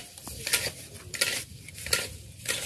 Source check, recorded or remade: recorded